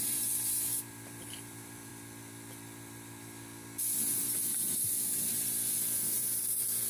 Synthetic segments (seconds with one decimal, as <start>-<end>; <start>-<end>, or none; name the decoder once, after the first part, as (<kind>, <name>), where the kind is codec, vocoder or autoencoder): 0.0-1.9 (vocoder, BigVGAN v2); 6.0-6.9